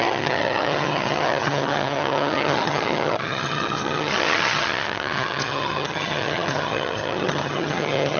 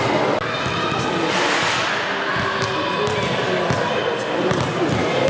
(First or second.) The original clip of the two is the second